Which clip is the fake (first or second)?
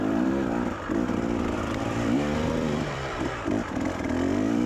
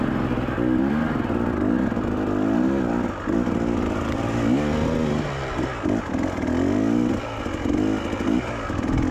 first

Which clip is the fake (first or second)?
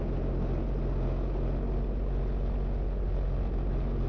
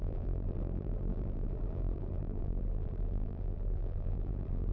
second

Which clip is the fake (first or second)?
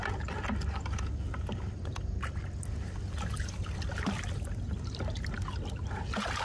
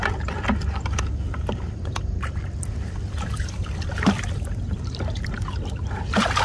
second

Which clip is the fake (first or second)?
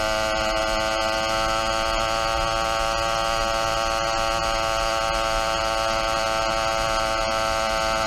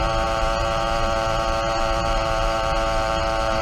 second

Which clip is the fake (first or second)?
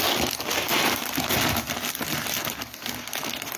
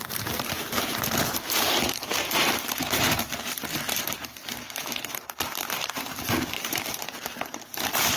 second